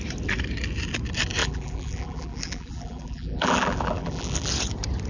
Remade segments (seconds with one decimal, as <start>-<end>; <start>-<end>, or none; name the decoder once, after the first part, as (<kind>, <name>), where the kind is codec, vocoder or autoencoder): 1.4-4.5 (vocoder, BigVGAN v2)